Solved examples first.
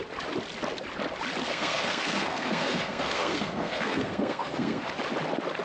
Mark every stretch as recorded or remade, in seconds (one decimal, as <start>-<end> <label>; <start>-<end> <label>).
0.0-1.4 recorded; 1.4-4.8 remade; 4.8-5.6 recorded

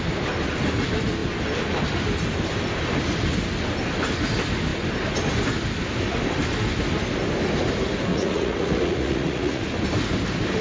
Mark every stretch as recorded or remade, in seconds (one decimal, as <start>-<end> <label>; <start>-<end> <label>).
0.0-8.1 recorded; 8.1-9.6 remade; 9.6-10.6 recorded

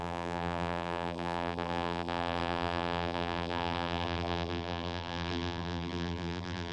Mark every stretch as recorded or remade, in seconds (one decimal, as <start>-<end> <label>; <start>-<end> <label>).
0.0-6.7 remade

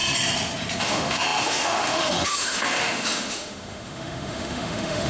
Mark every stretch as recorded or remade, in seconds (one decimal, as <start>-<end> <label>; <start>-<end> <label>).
0.0-0.8 recorded; 0.8-5.1 remade

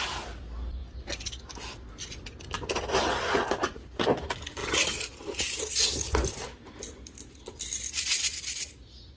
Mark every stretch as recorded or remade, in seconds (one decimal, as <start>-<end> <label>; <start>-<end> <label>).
0.0-9.2 recorded